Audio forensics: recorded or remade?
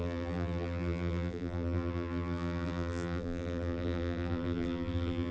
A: remade